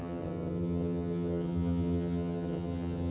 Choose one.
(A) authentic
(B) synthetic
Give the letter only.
B